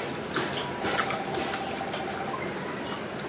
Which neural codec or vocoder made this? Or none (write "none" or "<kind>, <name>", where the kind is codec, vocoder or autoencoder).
none